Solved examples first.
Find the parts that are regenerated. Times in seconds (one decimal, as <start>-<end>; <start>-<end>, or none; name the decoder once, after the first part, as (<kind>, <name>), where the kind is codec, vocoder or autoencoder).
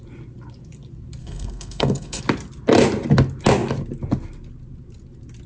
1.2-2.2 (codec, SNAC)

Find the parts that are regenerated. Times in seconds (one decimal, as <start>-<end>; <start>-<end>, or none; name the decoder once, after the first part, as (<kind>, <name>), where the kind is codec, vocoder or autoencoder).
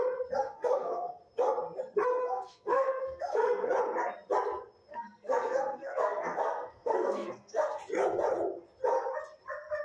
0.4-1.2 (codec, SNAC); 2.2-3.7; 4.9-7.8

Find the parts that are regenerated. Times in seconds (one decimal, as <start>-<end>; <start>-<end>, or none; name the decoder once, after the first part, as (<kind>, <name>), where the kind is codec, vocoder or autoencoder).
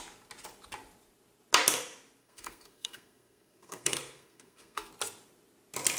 2.2-4.9 (codec, SNAC)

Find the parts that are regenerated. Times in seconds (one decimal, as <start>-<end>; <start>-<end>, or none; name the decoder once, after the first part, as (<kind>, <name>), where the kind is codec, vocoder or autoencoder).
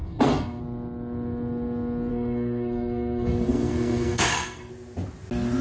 0.0-0.6 (codec, SNAC); 2.1-4.7